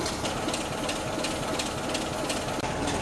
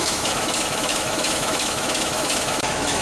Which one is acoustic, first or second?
first